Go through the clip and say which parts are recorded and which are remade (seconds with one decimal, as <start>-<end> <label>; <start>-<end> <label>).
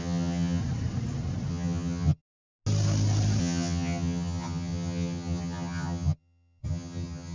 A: 0.0-0.6 remade; 0.6-1.5 recorded; 1.5-2.2 remade; 2.2-3.4 recorded; 3.4-7.3 remade